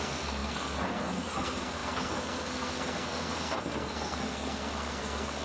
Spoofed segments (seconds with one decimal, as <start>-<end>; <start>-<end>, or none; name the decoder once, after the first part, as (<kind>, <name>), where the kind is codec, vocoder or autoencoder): 0.0-5.4 (codec, SNAC)